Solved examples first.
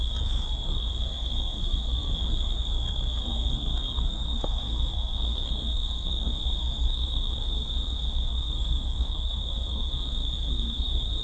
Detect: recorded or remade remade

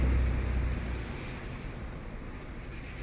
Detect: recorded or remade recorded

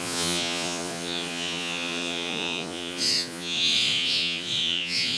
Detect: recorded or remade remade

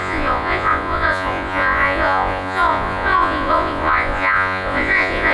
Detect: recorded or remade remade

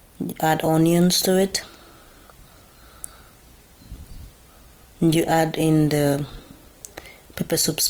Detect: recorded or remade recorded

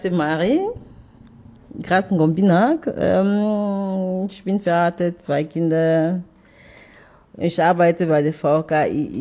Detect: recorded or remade recorded